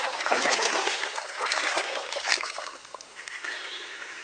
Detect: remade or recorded remade